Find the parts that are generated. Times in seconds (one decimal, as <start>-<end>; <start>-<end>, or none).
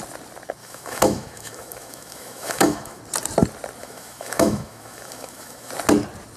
0.6-3.0; 3.8-5.7